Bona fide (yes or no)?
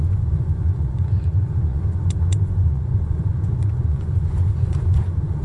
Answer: no